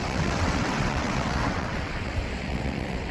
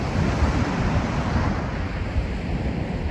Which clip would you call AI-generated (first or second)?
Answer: first